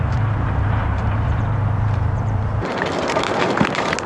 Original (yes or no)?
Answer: no